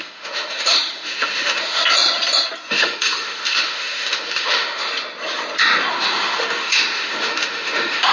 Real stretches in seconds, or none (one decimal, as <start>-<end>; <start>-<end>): 1.8-2.7; 4.9-5.9